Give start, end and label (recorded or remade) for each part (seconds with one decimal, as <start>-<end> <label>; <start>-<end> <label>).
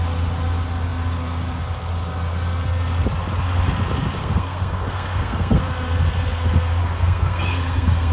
0.0-4.2 recorded; 4.2-5.6 remade; 5.6-6.8 recorded; 6.8-8.1 remade